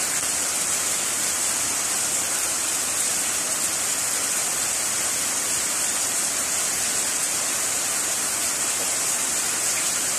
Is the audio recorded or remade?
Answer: recorded